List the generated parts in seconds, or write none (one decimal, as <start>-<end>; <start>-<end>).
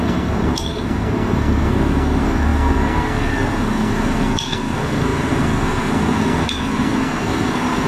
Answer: 0.0-7.9